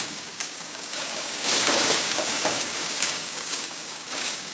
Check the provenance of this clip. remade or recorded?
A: remade